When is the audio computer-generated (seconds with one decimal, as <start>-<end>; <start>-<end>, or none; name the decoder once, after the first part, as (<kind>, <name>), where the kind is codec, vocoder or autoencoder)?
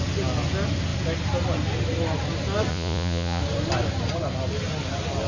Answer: 2.7-3.4 (vocoder, Vocos)